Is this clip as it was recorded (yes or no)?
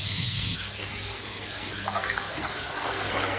no